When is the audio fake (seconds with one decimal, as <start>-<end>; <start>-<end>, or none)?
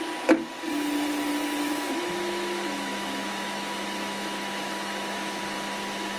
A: 1.7-5.4